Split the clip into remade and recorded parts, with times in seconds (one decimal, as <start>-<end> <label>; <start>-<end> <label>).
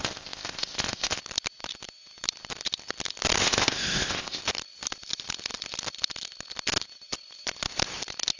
0.0-1.2 remade; 1.2-3.4 recorded; 3.4-4.4 remade; 4.4-8.4 recorded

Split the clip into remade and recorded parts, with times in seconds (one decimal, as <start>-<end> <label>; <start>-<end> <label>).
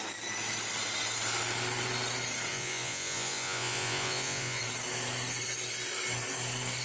0.0-2.5 recorded; 2.5-4.6 remade; 4.6-6.8 recorded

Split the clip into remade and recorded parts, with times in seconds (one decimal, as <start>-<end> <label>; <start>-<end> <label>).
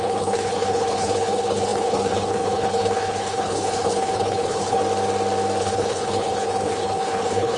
0.0-4.8 remade; 4.8-5.6 recorded; 5.6-7.6 remade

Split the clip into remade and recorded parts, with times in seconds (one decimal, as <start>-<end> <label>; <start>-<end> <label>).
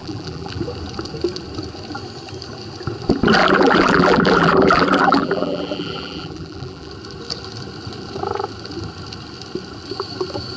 0.0-0.6 remade; 0.6-3.4 recorded; 3.4-6.9 remade; 6.9-10.6 recorded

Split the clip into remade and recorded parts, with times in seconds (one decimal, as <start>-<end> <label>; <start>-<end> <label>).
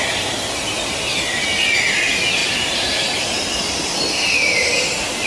0.0-2.4 recorded; 2.4-3.2 remade; 3.2-5.3 recorded